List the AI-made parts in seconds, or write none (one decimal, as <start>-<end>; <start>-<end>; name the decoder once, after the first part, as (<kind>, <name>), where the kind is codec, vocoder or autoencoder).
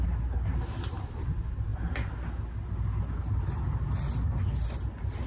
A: none